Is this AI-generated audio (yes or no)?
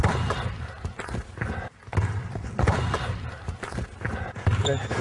no